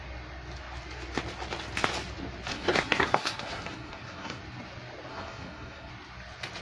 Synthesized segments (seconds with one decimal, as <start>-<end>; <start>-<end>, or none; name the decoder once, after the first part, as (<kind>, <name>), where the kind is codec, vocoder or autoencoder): 2.5-4.4 (codec, SNAC); 5.1-5.9